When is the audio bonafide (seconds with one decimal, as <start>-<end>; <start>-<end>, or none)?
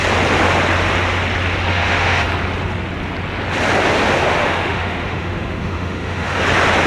0.0-1.7; 2.3-4.4; 6.4-6.9